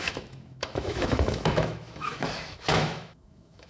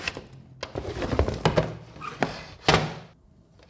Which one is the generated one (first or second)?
first